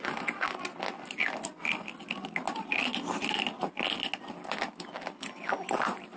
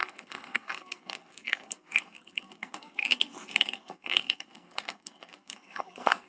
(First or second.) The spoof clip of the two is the second